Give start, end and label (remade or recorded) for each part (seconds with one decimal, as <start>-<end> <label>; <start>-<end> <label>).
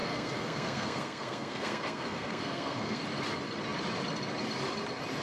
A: 0.0-3.0 remade; 3.0-5.2 recorded